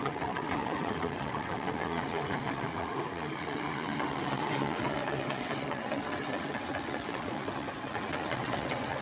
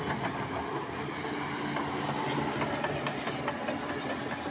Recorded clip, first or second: second